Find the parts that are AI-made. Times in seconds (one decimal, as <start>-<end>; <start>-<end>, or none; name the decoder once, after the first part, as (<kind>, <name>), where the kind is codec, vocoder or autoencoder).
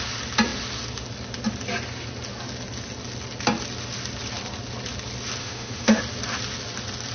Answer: 5.4-6.0 (autoencoder, DAC-VAE)